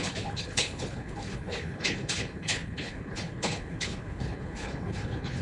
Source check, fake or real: fake